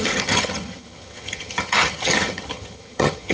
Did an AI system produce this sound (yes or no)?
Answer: yes